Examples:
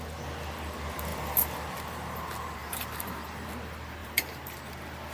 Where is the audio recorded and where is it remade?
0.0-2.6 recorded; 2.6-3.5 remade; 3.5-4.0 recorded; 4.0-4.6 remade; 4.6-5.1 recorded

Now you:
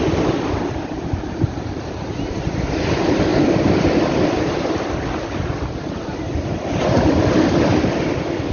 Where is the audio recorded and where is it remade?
0.0-8.5 remade

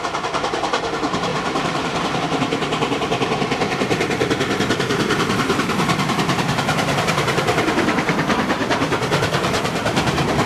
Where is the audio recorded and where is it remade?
0.0-8.6 remade; 8.6-9.1 recorded; 9.1-10.5 remade

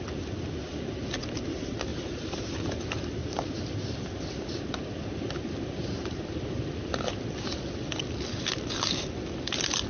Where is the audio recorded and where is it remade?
0.0-1.9 recorded; 1.9-2.8 remade; 2.8-3.2 recorded; 3.2-4.6 remade; 4.6-9.9 recorded

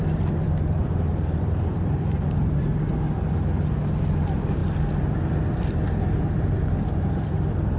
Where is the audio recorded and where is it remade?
0.0-0.8 recorded; 0.8-2.8 remade; 2.8-7.8 recorded

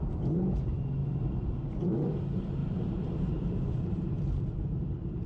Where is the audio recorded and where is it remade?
0.0-1.0 recorded; 1.0-2.2 remade; 2.2-2.6 recorded; 2.6-4.1 remade; 4.1-5.3 recorded

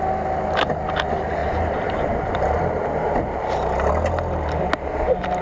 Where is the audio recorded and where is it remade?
0.0-1.4 recorded; 1.4-3.9 remade; 3.9-5.4 recorded

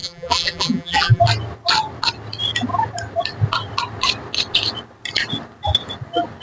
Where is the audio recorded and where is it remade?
0.0-1.2 remade; 1.2-6.4 recorded